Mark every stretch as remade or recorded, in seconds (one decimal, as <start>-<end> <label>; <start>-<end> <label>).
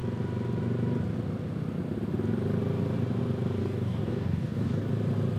0.0-3.6 recorded; 3.6-4.9 remade; 4.9-5.4 recorded